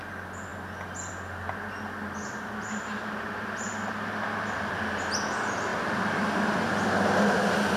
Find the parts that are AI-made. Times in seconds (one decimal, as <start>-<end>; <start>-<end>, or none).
none